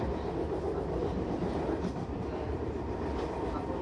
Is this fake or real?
fake